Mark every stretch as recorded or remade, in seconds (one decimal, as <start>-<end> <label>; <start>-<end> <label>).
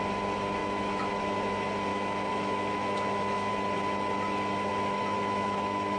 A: 0.0-0.6 recorded; 0.6-1.1 remade; 1.1-1.9 recorded; 1.9-3.5 remade; 3.5-4.7 recorded; 4.7-6.0 remade